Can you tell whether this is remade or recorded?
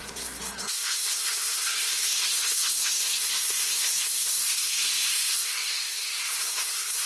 remade